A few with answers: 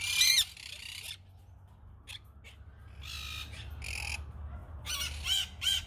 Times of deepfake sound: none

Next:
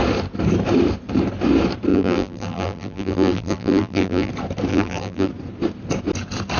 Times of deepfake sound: 1.9-4.3; 4.7-5.3

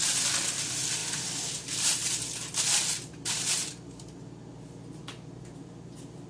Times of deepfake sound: none

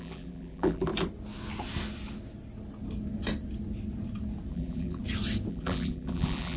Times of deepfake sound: 0.0-0.9; 4.5-5.0; 5.5-6.6

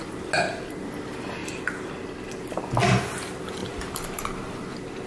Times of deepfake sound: 1.4-1.9; 3.6-4.2

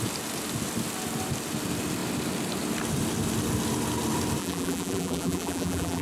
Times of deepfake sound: 4.4-6.0

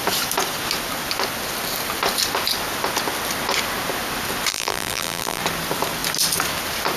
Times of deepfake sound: 4.5-5.4

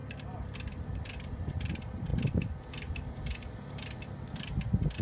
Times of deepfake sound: 2.1-3.4